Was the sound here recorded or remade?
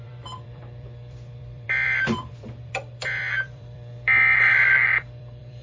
remade